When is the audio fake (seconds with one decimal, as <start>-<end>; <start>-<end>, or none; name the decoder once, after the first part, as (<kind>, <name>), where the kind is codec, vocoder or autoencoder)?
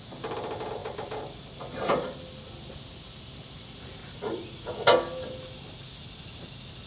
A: 4.0-4.7 (vocoder, Vocos)